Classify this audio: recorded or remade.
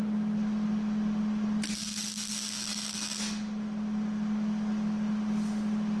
recorded